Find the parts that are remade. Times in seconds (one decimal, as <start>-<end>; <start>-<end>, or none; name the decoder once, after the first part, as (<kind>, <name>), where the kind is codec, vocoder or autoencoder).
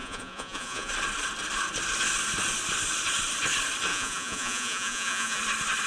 0.0-0.9 (vocoder, Vocos); 3.9-5.4